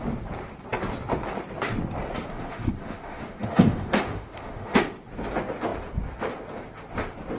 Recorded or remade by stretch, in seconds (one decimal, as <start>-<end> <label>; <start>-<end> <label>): 0.0-2.3 recorded; 2.3-4.8 remade; 4.8-7.4 recorded